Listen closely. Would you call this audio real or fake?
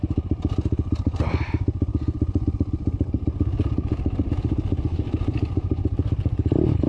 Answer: real